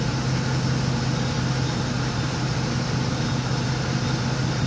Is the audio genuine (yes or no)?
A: yes